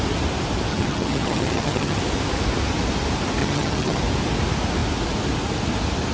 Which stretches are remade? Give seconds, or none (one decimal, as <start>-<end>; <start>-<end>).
0.7-2.0; 3.4-4.0